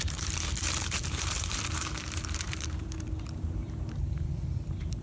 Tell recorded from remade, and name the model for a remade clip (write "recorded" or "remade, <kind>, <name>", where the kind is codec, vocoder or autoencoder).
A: remade, vocoder, BigVGAN v2